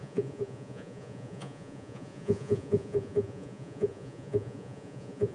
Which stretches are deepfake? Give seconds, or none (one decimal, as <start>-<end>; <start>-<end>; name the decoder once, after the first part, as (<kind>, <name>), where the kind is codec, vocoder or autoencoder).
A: 0.0-5.3 (vocoder, Vocos)